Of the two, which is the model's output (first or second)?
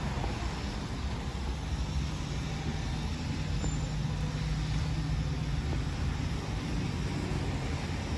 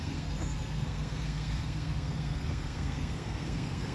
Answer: second